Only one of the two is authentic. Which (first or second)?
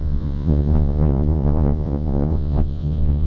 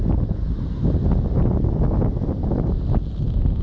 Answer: second